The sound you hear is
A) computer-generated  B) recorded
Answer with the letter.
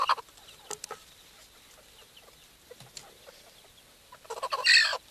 B